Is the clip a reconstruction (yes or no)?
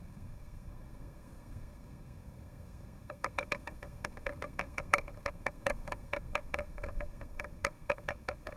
yes